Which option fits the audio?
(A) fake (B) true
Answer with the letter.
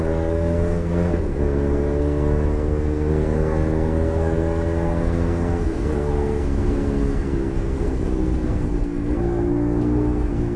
A